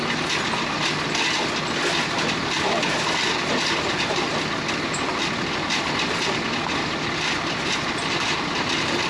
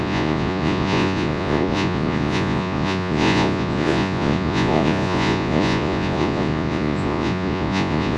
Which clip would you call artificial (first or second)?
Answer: second